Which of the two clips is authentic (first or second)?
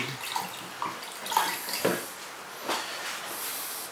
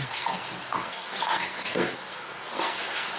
first